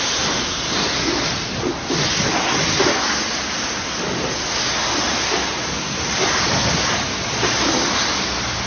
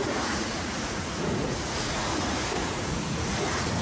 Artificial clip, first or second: second